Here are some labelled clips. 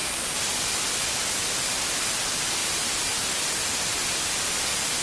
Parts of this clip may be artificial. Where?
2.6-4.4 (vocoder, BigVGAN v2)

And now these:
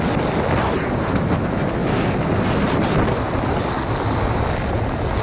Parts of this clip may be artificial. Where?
none

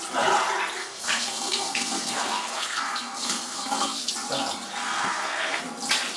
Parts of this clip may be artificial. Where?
0.8-4.1 (codec, SNAC); 4.8-5.6

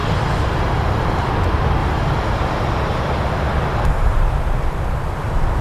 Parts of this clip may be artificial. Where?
0.0-1.3 (vocoder, BigVGAN v2); 1.8-4.2

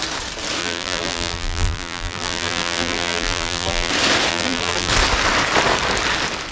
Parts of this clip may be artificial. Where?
0.6-3.9 (vocoder, BigVGAN v2); 4.3-4.9

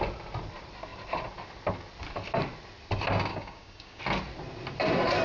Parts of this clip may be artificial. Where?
3.3-4.0 (codec, DAC)

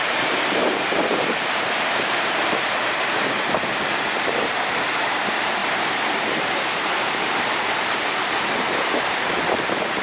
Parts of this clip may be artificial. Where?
0.0-10.0 (vocoder, BigVGAN v2)

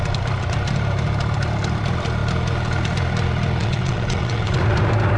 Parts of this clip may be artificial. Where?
3.6-4.6 (vocoder, WaveNeXt)